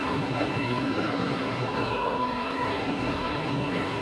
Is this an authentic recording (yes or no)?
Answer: no